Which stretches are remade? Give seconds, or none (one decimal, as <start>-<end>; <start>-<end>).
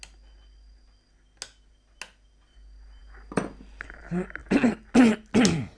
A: none